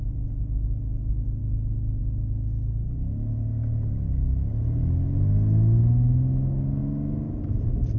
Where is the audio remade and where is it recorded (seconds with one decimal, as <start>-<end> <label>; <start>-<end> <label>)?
0.0-8.0 recorded